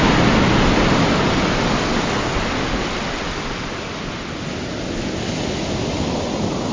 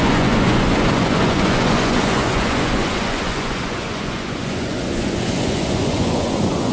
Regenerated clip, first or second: second